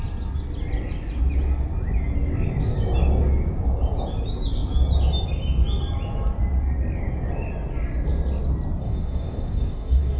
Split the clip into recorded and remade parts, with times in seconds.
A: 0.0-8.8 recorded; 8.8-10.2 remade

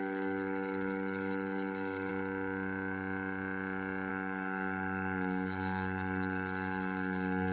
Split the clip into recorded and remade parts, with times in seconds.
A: 0.0-2.1 remade; 2.1-4.1 recorded; 4.1-7.5 remade

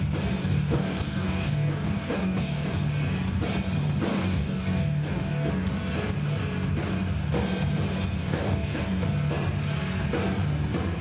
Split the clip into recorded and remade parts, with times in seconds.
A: 0.0-0.4 recorded; 0.4-2.7 remade; 2.7-4.1 recorded; 4.1-5.5 remade; 5.5-8.2 recorded; 8.2-8.9 remade; 8.9-11.0 recorded

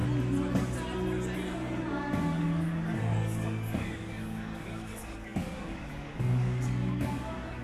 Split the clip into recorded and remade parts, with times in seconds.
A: 0.0-1.9 recorded; 1.9-7.6 remade

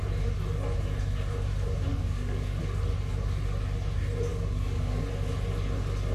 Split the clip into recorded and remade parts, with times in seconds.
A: 0.0-1.9 recorded; 1.9-2.6 remade; 2.6-4.3 recorded; 4.3-5.0 remade; 5.0-6.1 recorded

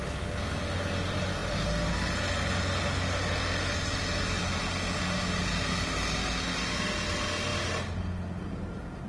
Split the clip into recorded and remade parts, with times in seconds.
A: 0.0-9.1 recorded